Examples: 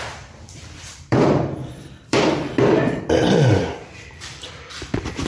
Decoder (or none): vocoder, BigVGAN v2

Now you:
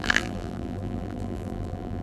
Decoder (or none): vocoder, BigVGAN v2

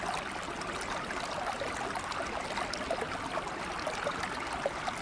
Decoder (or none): none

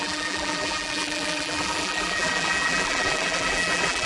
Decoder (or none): vocoder, BigVGAN v2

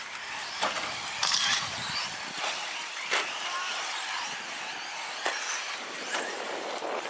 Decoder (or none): none